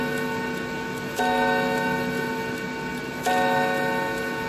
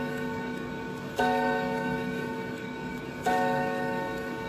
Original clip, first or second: first